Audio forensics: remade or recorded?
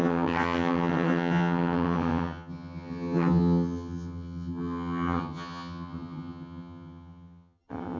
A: remade